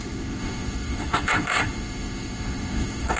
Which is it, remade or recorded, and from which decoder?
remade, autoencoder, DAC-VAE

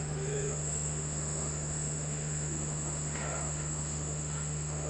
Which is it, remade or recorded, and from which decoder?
remade, autoencoder, DAC-VAE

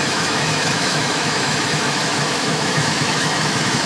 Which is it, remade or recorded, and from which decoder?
remade, autoencoder, DAC-VAE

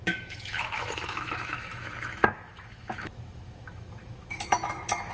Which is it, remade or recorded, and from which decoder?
remade, autoencoder, DAC-VAE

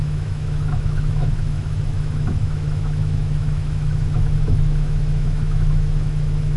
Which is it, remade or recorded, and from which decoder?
remade, autoencoder, DAC-VAE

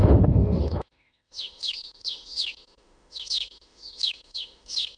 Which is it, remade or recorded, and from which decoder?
remade, autoencoder, DAC-VAE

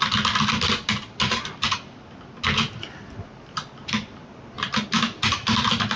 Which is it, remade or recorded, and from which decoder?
recorded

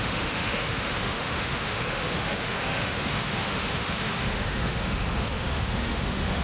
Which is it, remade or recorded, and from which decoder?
remade, autoencoder, DAC-VAE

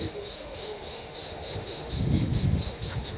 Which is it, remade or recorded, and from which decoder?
remade, autoencoder, DAC-VAE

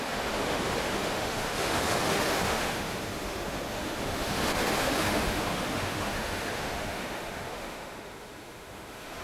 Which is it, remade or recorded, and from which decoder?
remade, autoencoder, DAC-VAE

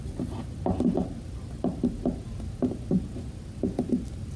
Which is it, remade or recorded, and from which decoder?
recorded